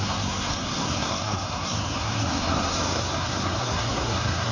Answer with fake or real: fake